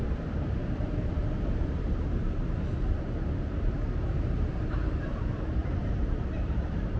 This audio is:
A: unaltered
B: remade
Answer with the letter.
B